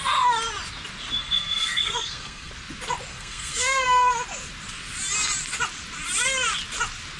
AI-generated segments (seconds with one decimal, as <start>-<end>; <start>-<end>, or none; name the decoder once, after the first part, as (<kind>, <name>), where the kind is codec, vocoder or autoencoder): 1.2-2.5 (codec, SNAC); 3.1-4.1